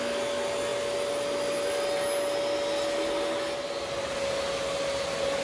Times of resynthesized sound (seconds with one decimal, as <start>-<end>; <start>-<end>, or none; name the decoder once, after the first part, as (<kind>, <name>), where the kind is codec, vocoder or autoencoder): none